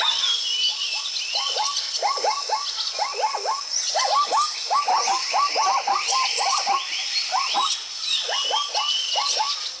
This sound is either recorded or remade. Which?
recorded